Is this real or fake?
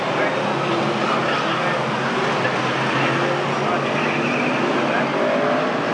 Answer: real